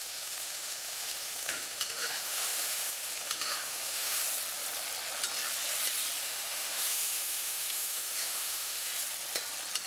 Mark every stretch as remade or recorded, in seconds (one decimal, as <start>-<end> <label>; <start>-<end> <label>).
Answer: 0.0-4.2 remade; 4.2-6.2 recorded; 6.2-8.9 remade; 8.9-9.9 recorded